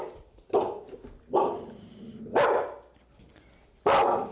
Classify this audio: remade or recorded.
recorded